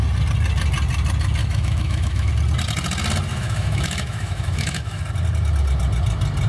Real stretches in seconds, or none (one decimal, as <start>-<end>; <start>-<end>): 0.0-1.4; 2.3-3.3; 5.0-6.5